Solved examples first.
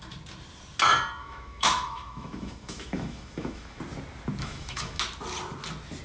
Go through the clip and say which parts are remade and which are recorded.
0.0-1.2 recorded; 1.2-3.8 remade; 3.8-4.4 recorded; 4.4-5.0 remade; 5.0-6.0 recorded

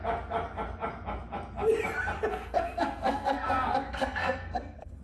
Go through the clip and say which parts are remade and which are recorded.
0.0-2.3 recorded; 2.3-5.0 remade

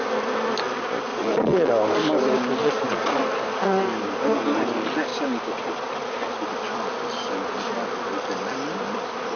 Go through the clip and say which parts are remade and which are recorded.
0.0-1.1 recorded; 1.1-1.7 remade; 1.7-2.6 recorded; 2.6-3.2 remade; 3.2-9.4 recorded

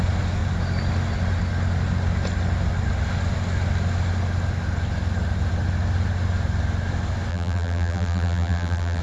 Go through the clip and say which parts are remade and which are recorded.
0.0-7.3 recorded; 7.3-9.0 remade

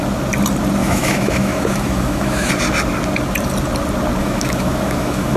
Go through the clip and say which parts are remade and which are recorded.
0.0-0.8 recorded; 0.8-2.5 remade; 2.5-4.2 recorded; 4.2-5.4 remade